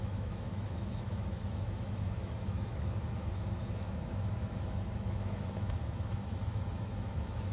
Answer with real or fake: fake